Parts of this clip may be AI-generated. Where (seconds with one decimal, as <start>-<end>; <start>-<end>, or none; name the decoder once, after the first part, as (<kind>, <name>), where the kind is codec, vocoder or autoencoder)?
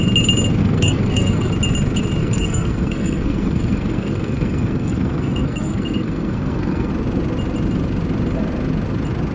0.6-1.5 (codec, SNAC); 2.2-6.9